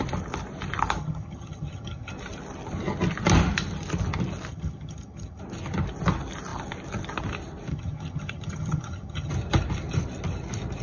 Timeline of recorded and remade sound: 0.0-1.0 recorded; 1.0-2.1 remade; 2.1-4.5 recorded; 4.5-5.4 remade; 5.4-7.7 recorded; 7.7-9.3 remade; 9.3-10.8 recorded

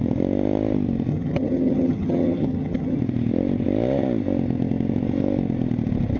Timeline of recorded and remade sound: 0.0-1.1 recorded; 1.1-3.0 remade; 3.0-6.2 recorded

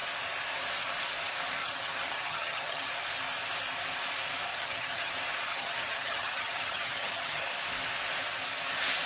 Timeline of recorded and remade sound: 0.0-1.6 recorded; 1.6-2.9 remade; 2.9-4.5 recorded; 4.5-5.1 remade; 5.1-5.5 recorded; 5.5-7.5 remade; 7.5-9.1 recorded

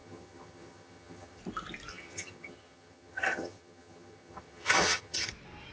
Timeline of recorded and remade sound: 0.0-1.4 remade; 1.4-1.9 recorded; 1.9-5.3 remade; 5.3-5.7 recorded

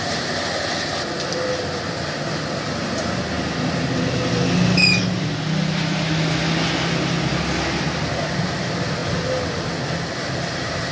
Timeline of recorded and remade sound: 0.0-10.9 recorded